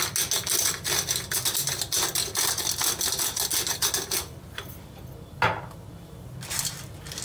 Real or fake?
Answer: real